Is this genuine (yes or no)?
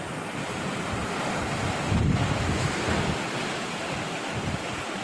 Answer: yes